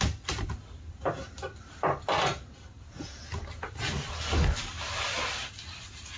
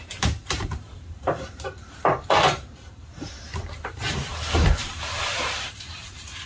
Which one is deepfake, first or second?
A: second